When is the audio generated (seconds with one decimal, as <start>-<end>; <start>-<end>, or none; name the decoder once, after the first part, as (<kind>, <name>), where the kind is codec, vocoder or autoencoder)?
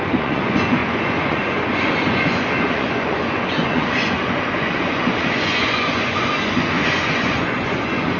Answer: 0.0-8.2 (vocoder, Vocos)